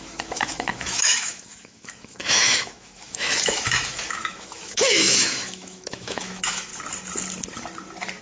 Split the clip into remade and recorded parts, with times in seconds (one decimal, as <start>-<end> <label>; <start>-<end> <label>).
0.0-6.7 remade; 6.7-8.2 recorded